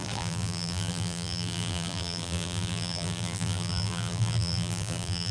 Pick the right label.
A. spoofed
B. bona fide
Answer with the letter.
A